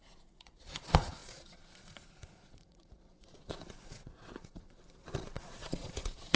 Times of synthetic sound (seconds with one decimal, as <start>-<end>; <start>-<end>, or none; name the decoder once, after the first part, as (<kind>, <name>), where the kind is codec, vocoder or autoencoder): 0.0-6.4 (vocoder, Vocos)